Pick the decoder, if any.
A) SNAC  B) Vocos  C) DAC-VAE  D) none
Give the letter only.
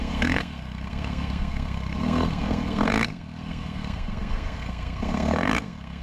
A